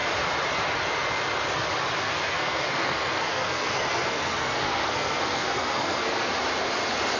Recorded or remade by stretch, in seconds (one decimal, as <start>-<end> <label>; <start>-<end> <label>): 0.0-2.0 recorded; 2.0-6.3 remade; 6.3-7.2 recorded